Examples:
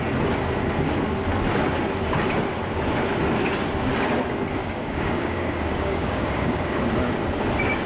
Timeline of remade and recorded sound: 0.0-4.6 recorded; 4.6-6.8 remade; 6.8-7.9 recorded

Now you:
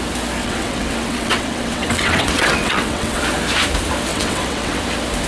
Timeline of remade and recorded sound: 0.0-0.4 recorded; 0.4-3.2 remade; 3.2-4.1 recorded; 4.1-4.8 remade; 4.8-5.3 recorded

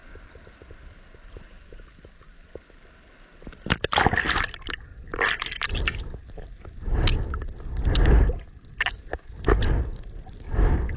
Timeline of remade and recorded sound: 0.0-4.3 recorded; 4.3-4.9 remade; 4.9-8.4 recorded; 8.4-11.0 remade

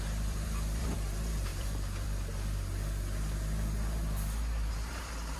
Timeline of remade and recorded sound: 0.0-5.4 remade

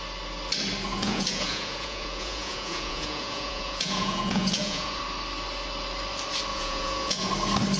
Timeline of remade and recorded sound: 0.0-0.9 recorded; 0.9-5.0 remade; 5.0-6.5 recorded; 6.5-7.3 remade; 7.3-7.8 recorded

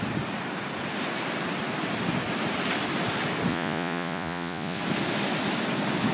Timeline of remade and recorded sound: 0.0-3.5 recorded; 3.5-4.8 remade; 4.8-6.1 recorded

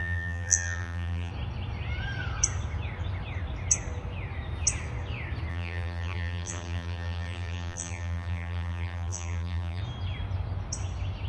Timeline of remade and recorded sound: 0.0-1.3 remade; 1.3-5.5 recorded; 5.5-9.8 remade; 9.8-11.3 recorded